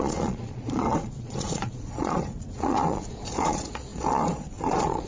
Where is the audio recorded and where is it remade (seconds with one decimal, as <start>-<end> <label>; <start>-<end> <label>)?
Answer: 0.0-5.1 remade